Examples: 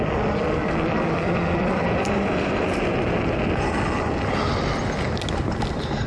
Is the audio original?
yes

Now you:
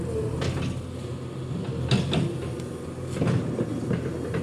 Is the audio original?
yes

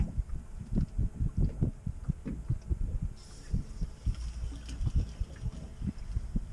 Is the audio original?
yes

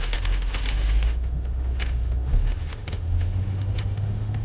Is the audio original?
no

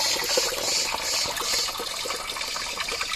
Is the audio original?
yes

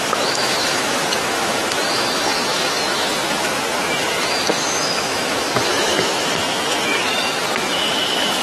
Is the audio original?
no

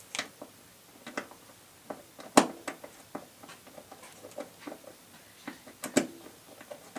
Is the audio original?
yes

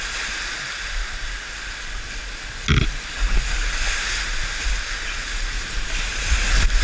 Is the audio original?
yes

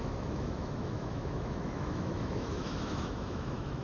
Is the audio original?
no